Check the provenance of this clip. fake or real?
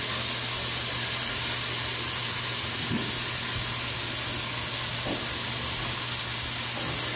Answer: real